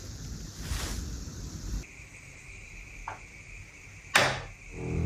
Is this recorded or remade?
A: recorded